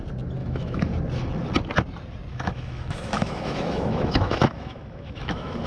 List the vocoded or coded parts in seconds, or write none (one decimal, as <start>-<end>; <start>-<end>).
0.4-0.9; 2.3-5.7